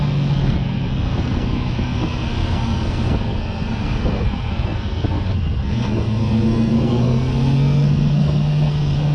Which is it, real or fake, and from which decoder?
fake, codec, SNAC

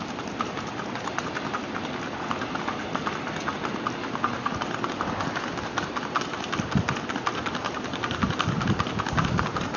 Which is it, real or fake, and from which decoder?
real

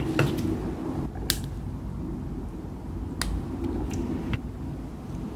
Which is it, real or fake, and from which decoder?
real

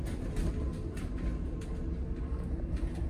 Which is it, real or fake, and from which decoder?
real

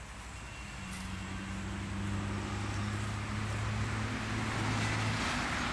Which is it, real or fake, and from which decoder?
real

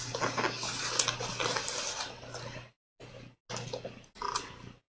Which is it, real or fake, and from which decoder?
real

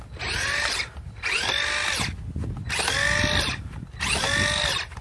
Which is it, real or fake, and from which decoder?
real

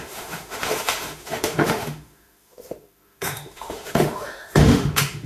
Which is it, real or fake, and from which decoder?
fake, autoencoder, DAC-VAE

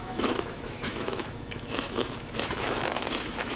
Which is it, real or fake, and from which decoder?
fake, autoencoder, DAC-VAE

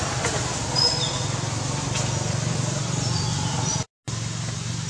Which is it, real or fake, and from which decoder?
real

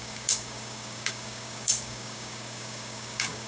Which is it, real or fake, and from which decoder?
fake, codec, DAC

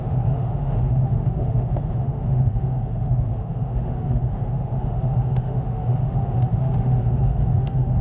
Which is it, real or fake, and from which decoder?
fake, autoencoder, DAC-VAE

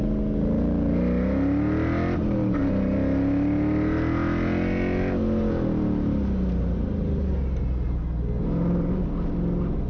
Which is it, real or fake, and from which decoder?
real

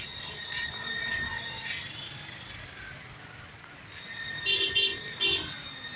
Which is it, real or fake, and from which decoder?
real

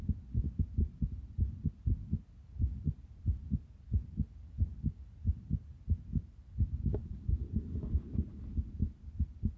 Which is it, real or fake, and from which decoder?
real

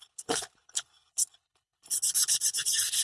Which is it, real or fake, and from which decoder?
fake, codec, HILCodec